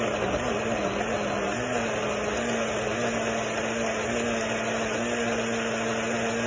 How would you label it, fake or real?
real